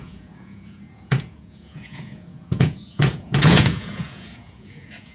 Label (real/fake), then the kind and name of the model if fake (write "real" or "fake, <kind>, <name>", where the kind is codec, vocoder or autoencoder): fake, vocoder, Vocos